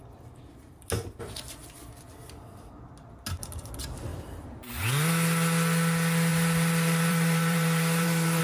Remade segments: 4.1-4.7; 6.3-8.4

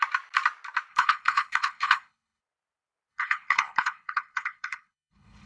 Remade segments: 0.9-2.4; 3.1-5.5

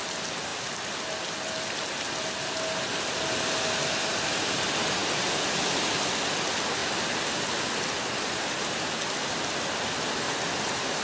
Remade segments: none

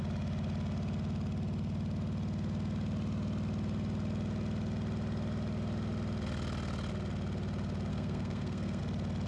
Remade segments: 7.9-8.8

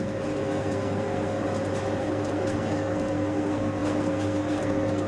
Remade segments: 0.0-1.4; 2.0-5.1

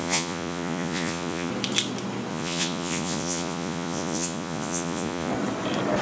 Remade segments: 0.0-1.5; 2.3-5.3